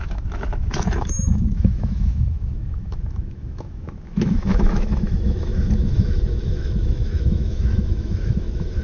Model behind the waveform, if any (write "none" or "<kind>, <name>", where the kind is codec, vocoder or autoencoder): autoencoder, DAC-VAE